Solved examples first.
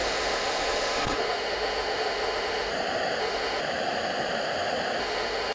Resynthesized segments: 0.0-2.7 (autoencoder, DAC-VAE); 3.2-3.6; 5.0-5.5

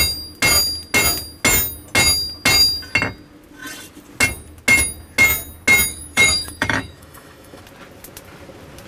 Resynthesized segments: 5.9-7.6 (autoencoder, DAC-VAE)

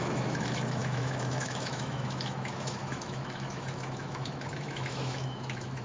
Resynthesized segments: 0.0-5.8 (autoencoder, DAC-VAE)

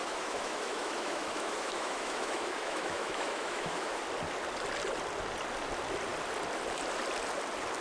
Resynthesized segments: 0.0-4.0 (autoencoder, DAC-VAE)

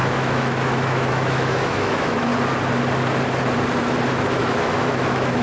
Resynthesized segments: 0.0-2.3 (autoencoder, DAC-VAE); 4.4-5.4

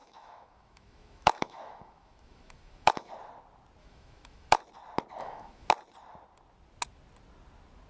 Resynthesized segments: 0.0-3.1 (autoencoder, DAC-VAE); 3.8-4.6; 5.2-5.7

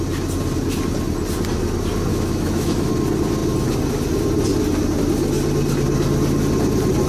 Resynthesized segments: 2.1-2.9 (autoencoder, DAC-VAE)

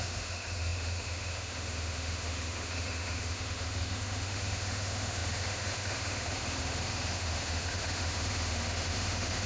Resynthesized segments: 0.0-9.5 (autoencoder, DAC-VAE)